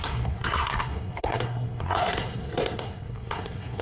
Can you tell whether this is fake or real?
fake